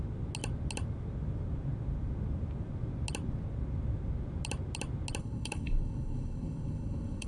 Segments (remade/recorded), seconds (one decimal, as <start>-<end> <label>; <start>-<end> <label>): 0.0-5.2 recorded; 5.2-7.3 remade